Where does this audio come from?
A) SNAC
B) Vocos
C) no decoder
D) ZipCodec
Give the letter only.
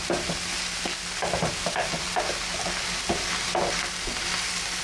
C